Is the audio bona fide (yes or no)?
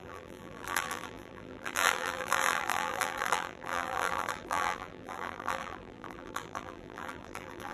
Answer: no